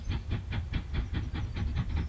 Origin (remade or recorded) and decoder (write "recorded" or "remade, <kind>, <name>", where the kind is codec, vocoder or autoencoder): recorded